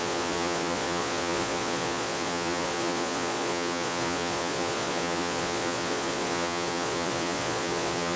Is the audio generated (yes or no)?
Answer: yes